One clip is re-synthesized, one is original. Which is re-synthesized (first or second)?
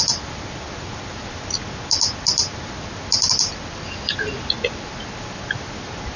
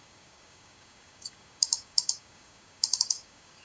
second